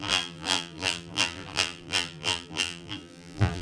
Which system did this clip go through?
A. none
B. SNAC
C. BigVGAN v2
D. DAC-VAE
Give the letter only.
C